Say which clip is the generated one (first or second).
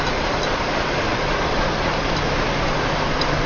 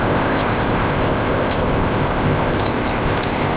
second